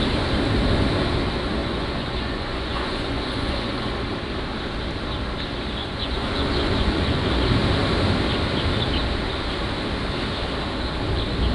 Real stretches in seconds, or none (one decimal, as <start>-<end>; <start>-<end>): 0.0-1.6; 3.9-5.8; 7.3-11.5